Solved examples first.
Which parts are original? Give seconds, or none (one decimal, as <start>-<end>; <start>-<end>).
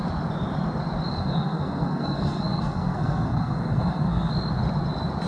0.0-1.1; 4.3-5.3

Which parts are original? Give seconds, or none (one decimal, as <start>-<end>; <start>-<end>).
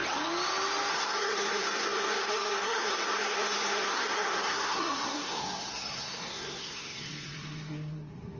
0.0-0.9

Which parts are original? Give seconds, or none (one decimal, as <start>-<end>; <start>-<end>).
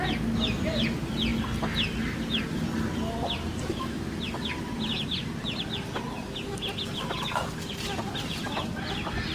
0.0-3.6; 4.1-9.3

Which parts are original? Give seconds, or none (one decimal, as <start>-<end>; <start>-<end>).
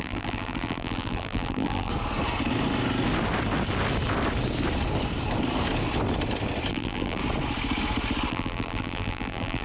1.9-6.7; 7.2-8.3